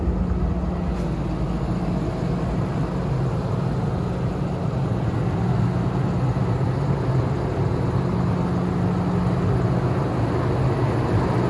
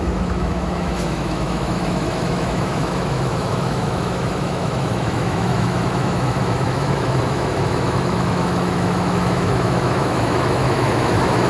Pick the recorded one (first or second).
first